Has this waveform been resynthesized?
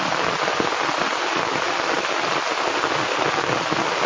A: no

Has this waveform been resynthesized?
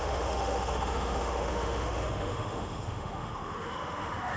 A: yes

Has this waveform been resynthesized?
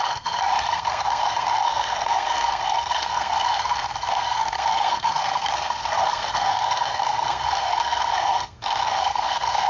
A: yes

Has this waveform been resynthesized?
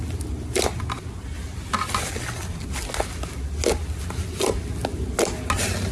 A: no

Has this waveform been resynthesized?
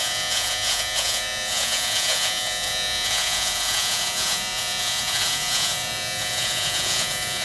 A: yes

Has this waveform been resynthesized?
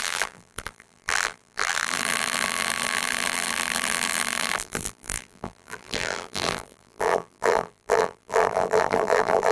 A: yes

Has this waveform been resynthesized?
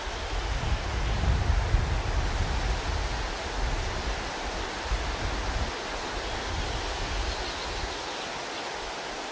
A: no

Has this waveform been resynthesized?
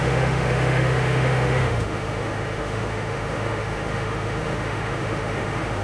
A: yes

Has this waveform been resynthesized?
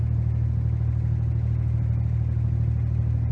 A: no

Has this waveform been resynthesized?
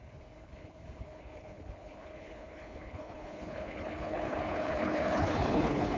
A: yes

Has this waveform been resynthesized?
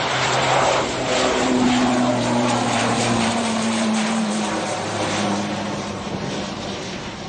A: yes